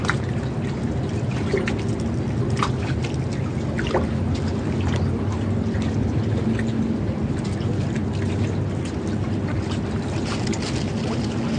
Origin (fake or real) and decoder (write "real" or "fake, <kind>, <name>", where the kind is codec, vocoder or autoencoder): real